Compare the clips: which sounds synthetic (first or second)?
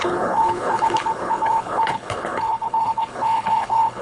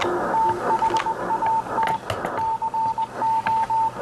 first